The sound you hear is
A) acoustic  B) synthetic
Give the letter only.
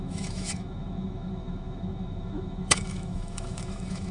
B